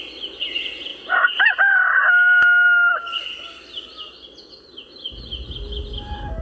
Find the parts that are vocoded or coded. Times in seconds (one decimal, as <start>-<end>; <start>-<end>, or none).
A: none